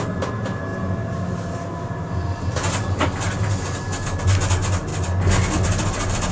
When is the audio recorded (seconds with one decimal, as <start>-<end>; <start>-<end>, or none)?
0.0-6.3